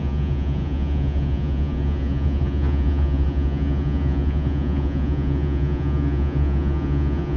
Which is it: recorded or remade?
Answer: remade